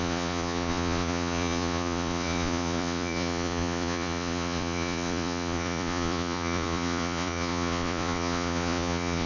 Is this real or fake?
fake